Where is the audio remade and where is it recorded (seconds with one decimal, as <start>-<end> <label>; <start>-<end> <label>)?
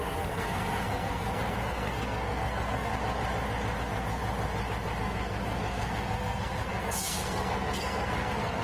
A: 0.0-2.9 remade; 2.9-3.8 recorded; 3.8-4.2 remade; 4.2-5.0 recorded; 5.0-8.6 remade